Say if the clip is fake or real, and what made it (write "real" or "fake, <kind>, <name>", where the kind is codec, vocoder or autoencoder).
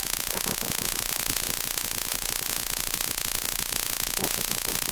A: fake, vocoder, Vocos